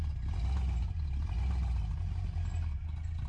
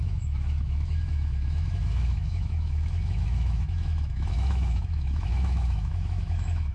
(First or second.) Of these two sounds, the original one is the first